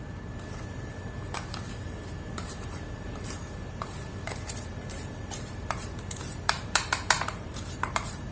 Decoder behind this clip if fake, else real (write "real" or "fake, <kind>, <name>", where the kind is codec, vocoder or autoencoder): fake, vocoder, BigVGAN v2